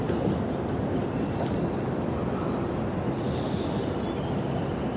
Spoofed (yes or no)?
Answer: no